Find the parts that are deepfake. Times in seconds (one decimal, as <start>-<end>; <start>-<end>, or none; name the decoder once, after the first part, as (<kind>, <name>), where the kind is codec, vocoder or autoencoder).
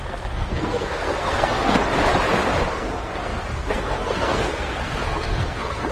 0.0-1.8 (codec, SNAC); 2.7-5.9